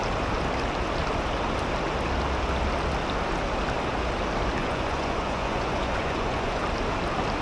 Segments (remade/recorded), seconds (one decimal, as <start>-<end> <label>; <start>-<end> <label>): 0.0-4.6 recorded; 4.6-6.6 remade; 6.6-7.4 recorded